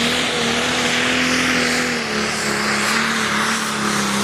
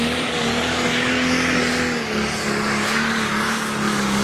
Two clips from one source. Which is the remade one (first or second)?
second